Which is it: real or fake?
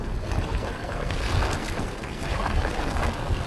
fake